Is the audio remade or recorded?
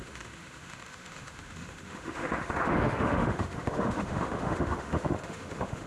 remade